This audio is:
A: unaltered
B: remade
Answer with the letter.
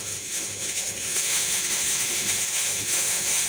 B